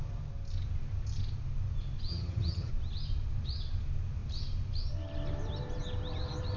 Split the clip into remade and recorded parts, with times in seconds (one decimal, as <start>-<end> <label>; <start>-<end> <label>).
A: 0.0-2.1 recorded; 2.1-2.7 remade; 2.7-6.6 recorded

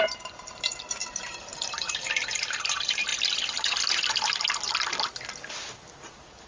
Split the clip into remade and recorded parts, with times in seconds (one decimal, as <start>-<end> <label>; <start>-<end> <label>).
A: 0.0-3.1 remade; 3.1-6.1 recorded; 6.1-6.5 remade

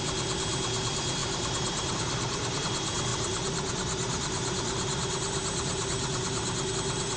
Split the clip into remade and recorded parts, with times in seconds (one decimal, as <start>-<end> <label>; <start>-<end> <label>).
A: 0.0-1.2 recorded; 1.2-2.6 remade; 2.6-3.1 recorded; 3.1-6.7 remade; 6.7-7.2 recorded

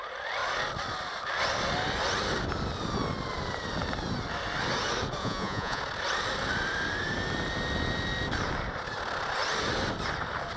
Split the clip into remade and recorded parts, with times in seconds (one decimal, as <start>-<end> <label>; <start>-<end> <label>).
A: 0.0-5.2 recorded; 5.2-5.8 remade; 5.8-10.6 recorded

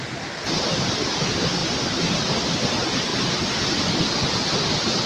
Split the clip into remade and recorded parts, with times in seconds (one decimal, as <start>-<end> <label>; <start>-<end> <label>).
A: 0.0-5.1 recorded